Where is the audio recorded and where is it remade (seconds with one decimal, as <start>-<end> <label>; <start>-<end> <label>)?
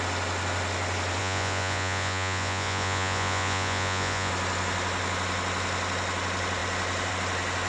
0.0-1.2 recorded; 1.2-4.3 remade; 4.3-7.7 recorded